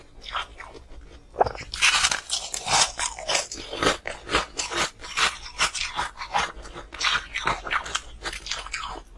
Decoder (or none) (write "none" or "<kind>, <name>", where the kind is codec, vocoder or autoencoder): none